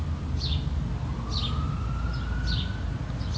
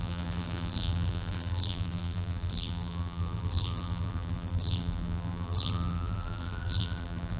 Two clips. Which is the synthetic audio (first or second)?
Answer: second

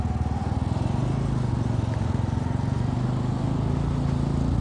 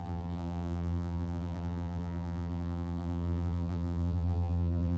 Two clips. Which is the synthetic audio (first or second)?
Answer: second